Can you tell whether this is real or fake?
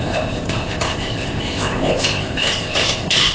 fake